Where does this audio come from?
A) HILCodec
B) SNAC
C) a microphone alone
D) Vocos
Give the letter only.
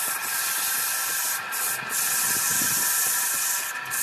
C